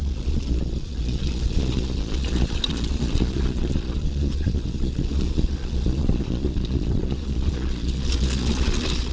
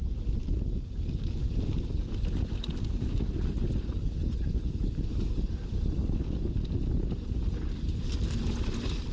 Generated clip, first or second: first